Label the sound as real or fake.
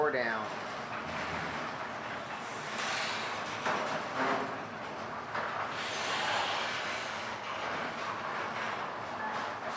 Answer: real